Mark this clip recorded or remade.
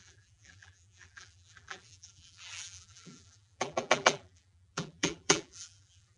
remade